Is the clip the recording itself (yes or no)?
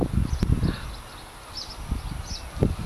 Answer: yes